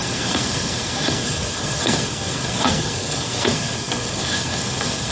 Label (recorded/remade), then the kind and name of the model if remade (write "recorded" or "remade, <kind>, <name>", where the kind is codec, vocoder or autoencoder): remade, codec, SNAC